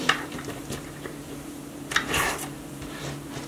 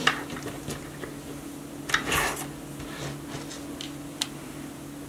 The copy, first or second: first